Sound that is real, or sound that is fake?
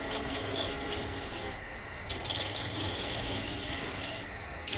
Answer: fake